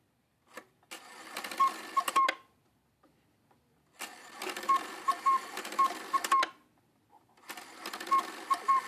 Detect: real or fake real